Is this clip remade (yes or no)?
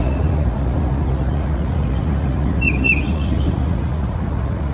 yes